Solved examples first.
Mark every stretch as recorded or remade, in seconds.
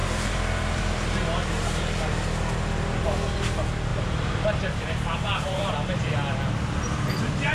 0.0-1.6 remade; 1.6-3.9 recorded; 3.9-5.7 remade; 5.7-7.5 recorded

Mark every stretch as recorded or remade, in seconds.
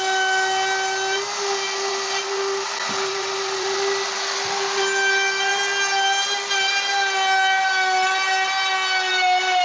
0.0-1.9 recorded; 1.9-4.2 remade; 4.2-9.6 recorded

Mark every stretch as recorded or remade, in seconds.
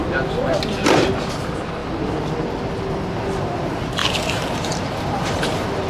0.0-4.0 recorded; 4.0-5.9 remade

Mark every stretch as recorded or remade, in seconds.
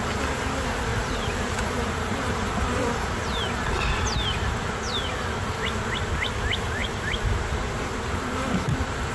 0.0-0.9 recorded; 0.9-3.7 remade; 3.7-6.8 recorded; 6.8-8.1 remade; 8.1-9.1 recorded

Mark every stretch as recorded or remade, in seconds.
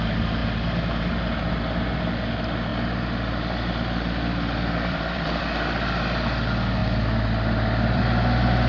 0.0-2.7 recorded; 2.7-5.4 remade; 5.4-6.8 recorded; 6.8-8.0 remade; 8.0-8.7 recorded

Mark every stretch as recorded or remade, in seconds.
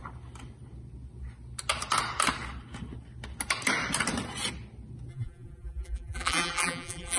0.0-5.1 recorded; 5.1-7.2 remade